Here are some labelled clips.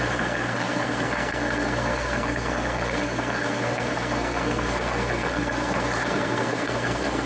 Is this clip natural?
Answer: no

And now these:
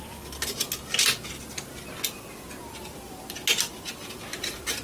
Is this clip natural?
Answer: yes